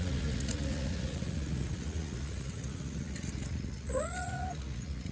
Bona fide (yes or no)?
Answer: no